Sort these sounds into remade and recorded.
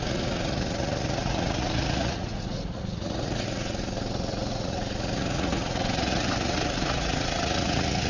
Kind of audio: remade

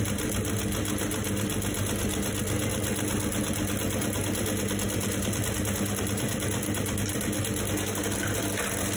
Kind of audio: recorded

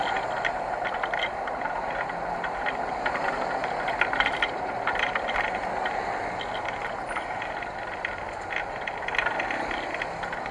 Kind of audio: recorded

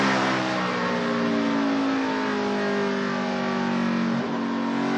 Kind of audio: recorded